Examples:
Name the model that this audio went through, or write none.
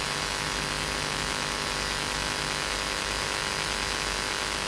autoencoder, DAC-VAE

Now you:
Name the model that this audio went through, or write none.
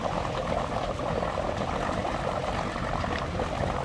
none